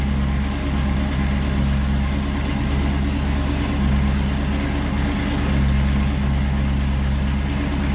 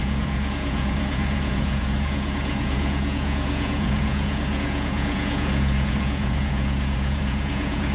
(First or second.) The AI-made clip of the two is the second